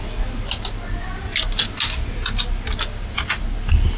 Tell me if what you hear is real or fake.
real